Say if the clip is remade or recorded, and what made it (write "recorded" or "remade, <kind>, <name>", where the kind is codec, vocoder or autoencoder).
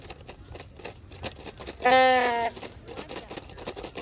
recorded